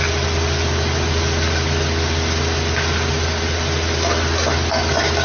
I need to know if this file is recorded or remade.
recorded